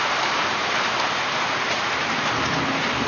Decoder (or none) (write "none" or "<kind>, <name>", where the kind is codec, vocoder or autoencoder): vocoder, BigVGAN v2